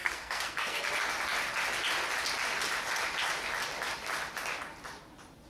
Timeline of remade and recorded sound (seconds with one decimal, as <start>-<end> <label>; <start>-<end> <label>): 0.0-0.9 remade; 0.9-5.5 recorded